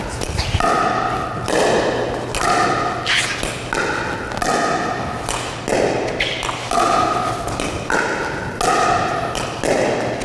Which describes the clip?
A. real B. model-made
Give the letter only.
A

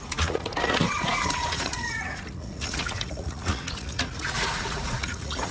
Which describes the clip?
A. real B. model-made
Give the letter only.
B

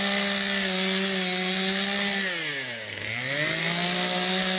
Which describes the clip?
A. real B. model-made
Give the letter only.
A